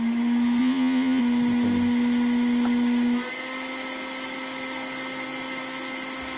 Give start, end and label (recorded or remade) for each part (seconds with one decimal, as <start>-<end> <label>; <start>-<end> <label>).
0.0-0.6 recorded; 0.6-1.2 remade; 1.2-6.4 recorded